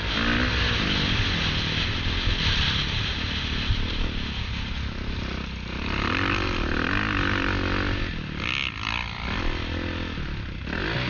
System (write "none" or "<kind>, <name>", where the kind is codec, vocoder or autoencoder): none